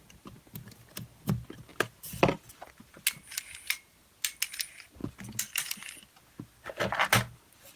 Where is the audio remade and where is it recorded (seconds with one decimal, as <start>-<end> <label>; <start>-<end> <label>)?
0.0-7.8 recorded